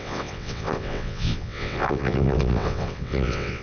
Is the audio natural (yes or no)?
no